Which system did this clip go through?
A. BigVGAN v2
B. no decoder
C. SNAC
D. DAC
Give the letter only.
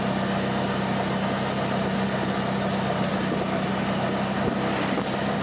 B